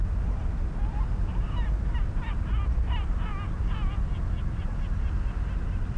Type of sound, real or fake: real